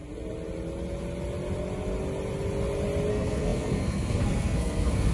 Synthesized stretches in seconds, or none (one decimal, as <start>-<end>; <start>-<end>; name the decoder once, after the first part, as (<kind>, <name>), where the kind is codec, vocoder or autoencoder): 3.1-5.1 (codec, SNAC)